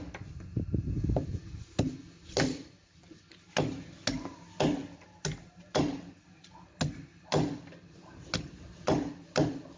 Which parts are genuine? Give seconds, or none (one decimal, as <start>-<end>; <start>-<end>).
0.0-9.8